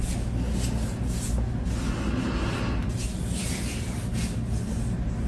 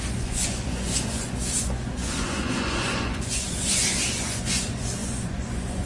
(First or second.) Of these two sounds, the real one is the first